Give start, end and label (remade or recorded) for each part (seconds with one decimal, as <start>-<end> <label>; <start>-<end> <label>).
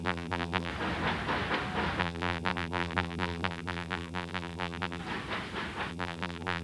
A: 0.0-0.7 remade; 0.7-2.0 recorded; 2.0-5.0 remade; 5.0-5.9 recorded; 5.9-6.6 remade